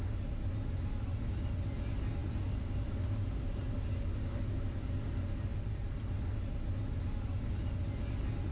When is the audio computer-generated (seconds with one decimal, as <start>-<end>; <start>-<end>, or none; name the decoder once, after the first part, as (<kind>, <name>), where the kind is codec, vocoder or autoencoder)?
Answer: none